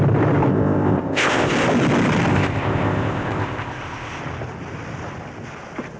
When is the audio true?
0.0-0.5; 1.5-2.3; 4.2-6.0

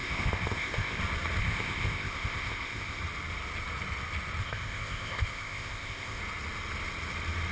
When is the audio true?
1.0-1.4; 3.0-4.4; 6.2-7.5

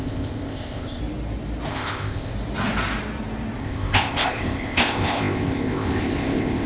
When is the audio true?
1.0-1.7; 2.3-3.6